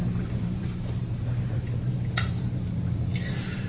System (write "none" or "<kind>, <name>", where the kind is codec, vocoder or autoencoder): vocoder, BigVGAN v2